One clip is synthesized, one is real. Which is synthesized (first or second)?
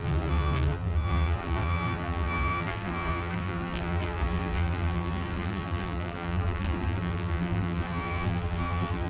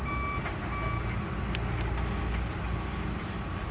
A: first